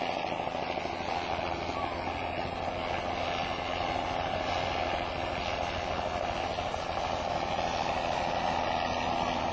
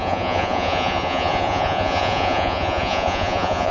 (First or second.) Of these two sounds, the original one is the first